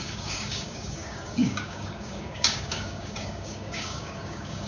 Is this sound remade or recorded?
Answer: remade